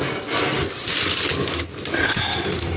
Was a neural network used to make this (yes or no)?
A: no